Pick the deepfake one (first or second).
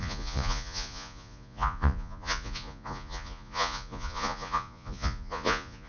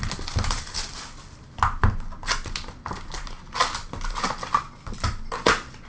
first